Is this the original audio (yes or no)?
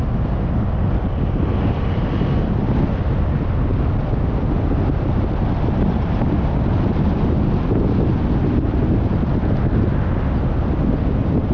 yes